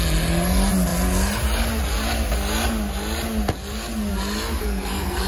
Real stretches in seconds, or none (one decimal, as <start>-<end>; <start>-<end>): 0.0-4.6